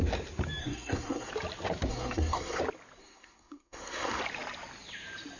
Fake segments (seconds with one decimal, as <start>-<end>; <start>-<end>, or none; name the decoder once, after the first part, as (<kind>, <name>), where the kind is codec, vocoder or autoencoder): 0.6-1.3 (codec, SNAC); 1.9-2.6; 3.0-4.2